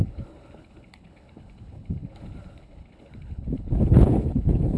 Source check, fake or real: fake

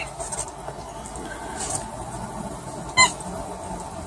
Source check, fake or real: real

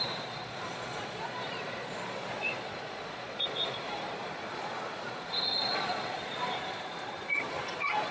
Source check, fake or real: fake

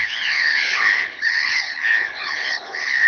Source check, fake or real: fake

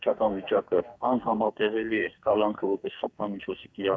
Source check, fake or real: fake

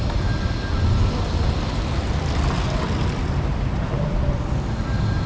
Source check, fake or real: real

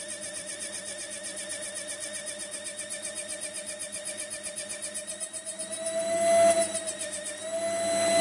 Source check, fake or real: real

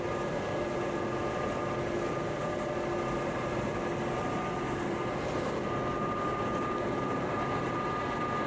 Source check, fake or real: real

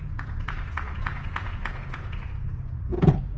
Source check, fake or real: fake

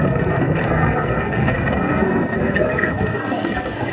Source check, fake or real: fake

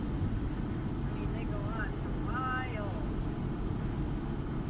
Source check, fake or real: real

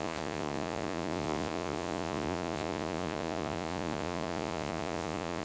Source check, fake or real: fake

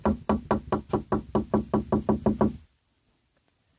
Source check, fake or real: real